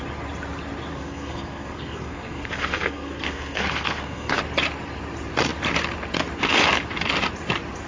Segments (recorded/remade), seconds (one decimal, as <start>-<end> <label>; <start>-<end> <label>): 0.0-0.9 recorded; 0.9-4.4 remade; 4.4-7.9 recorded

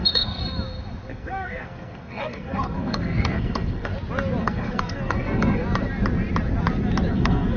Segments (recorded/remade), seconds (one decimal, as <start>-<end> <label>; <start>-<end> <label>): 0.0-0.4 remade; 0.4-1.1 recorded; 1.1-3.9 remade; 3.9-4.4 recorded; 4.4-5.6 remade; 5.6-7.1 recorded; 7.1-7.6 remade

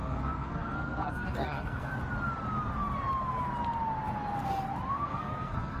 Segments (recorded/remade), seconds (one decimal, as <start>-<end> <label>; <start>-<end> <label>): 0.0-1.9 remade; 1.9-4.9 recorded; 4.9-5.8 remade

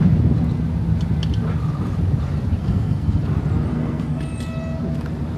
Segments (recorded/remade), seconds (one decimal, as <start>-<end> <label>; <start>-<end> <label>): 0.0-2.6 recorded; 2.6-3.2 remade; 3.2-3.7 recorded; 3.7-4.2 remade; 4.2-5.4 recorded

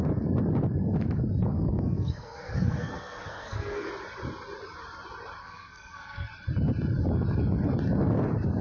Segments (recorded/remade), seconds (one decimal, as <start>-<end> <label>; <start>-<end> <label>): 0.0-1.5 recorded; 1.5-3.9 remade; 3.9-5.4 recorded; 5.4-6.3 remade; 6.3-8.6 recorded

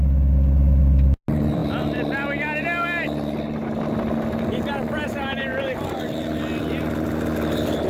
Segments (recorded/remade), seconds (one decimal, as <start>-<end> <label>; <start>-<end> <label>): 0.0-7.9 recorded

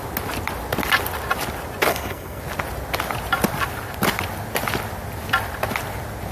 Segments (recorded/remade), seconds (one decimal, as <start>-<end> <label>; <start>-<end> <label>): 0.0-1.9 recorded; 1.9-2.4 remade; 2.4-6.3 recorded